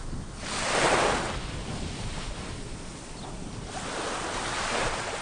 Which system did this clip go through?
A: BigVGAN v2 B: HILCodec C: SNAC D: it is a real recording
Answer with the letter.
D